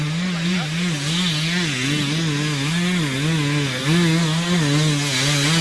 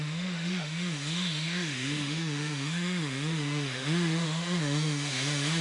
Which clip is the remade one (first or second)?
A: second